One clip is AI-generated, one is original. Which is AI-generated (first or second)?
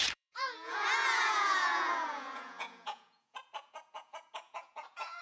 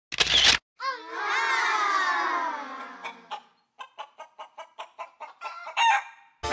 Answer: first